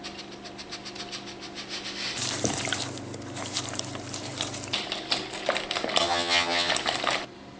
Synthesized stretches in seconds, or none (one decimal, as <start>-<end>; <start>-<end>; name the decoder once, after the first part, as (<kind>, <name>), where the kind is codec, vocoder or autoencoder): 6.0-6.7 (vocoder, HiFi-GAN)